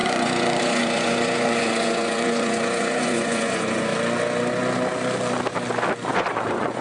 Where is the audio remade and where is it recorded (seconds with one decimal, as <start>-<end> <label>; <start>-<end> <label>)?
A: 0.0-3.9 remade; 3.9-6.1 recorded; 6.1-6.8 remade

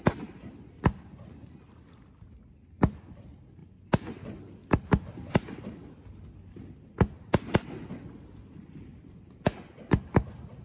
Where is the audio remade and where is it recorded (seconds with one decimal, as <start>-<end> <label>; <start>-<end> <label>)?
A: 0.0-10.6 recorded

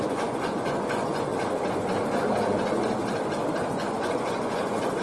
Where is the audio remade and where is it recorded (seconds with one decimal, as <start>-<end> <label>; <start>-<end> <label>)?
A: 0.0-1.3 remade; 1.3-2.2 recorded; 2.2-3.0 remade; 3.0-3.7 recorded; 3.7-5.0 remade

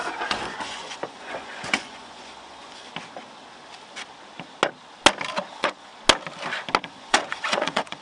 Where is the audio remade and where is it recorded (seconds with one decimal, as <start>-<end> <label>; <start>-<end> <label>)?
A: 0.0-2.9 remade; 2.9-5.5 recorded; 5.5-5.9 remade; 5.9-6.8 recorded; 6.8-8.0 remade

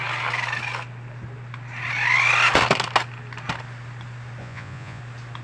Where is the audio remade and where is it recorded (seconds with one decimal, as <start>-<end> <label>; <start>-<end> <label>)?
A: 0.0-4.4 recorded; 4.4-5.0 remade; 5.0-5.4 recorded

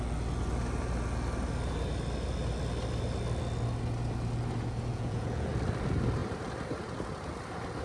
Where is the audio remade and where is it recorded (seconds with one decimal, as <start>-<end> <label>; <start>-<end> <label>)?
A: 0.0-4.9 recorded; 4.9-5.5 remade; 5.5-7.8 recorded

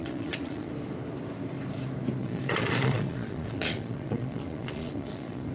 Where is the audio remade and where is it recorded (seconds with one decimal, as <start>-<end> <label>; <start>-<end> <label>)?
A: 0.0-0.7 remade; 0.7-2.2 recorded; 2.2-5.5 remade